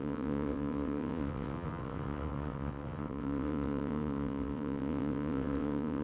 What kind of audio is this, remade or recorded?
remade